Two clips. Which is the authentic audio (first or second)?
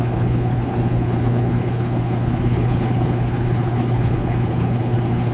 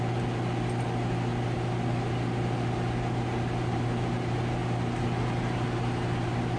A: second